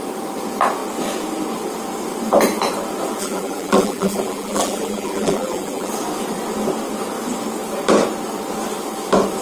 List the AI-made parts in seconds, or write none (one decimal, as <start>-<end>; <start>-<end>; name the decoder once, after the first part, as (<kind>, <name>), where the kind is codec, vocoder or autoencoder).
3.2-5.9 (vocoder, BigVGAN v2)